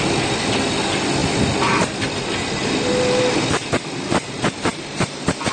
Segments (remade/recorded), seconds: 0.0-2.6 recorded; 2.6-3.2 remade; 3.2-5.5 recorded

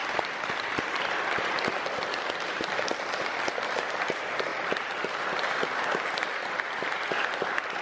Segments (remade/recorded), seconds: 0.0-1.5 remade; 1.5-4.5 recorded; 4.5-5.1 remade; 5.1-7.8 recorded

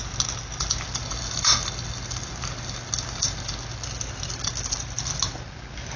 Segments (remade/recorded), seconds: 0.0-1.0 recorded; 1.0-2.3 remade; 2.3-6.0 recorded

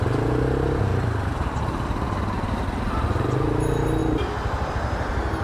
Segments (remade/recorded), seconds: 0.0-0.9 recorded; 0.9-2.9 remade; 2.9-4.0 recorded; 4.0-4.7 remade; 4.7-5.4 recorded

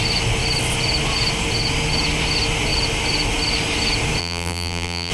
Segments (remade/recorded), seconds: 0.0-4.2 recorded; 4.2-5.1 remade

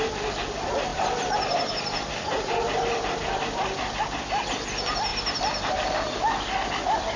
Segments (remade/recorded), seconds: 0.0-0.9 recorded; 0.9-4.0 remade; 4.0-7.2 recorded

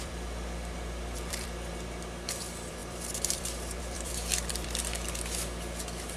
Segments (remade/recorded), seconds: 0.0-6.2 remade